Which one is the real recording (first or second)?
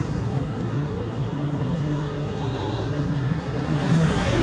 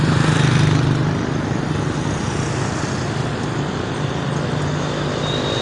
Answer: second